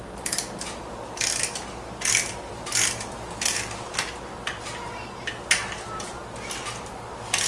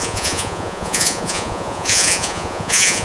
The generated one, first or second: second